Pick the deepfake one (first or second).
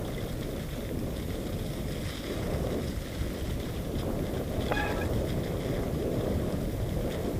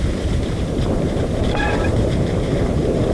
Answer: second